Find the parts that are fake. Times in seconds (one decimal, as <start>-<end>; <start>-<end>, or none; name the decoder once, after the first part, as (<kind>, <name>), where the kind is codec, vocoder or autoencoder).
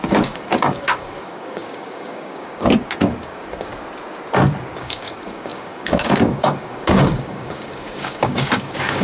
0.0-3.7 (codec, DAC); 4.7-9.0